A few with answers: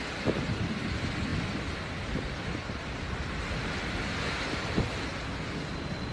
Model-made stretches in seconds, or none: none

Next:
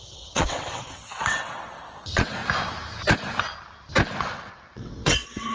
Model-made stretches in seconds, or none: 0.0-2.4 (vocoder, WaveNeXt); 4.2-5.5

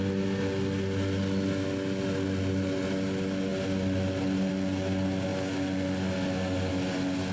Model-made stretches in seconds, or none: none

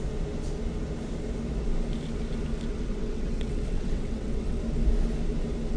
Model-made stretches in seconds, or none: 2.7-4.6 (vocoder, WaveNeXt)

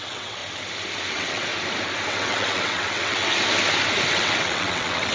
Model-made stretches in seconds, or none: 0.0-0.4 (vocoder, WaveNeXt); 1.1-1.5; 2.1-3.3; 4.1-5.1